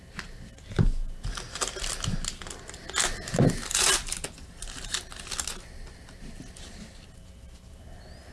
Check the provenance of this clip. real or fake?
real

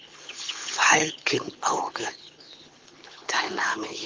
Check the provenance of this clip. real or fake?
fake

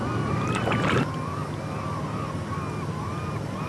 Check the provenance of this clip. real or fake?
real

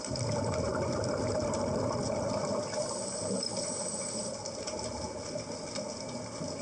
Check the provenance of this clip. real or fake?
real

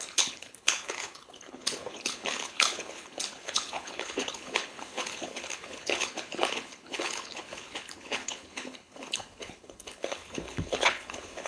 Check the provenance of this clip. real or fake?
fake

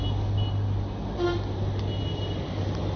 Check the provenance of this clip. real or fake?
real